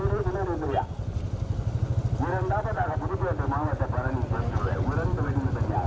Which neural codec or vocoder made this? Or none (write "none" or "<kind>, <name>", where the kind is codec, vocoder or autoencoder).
none